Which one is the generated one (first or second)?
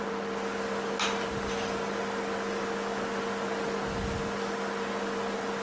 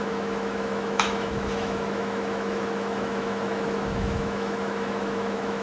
second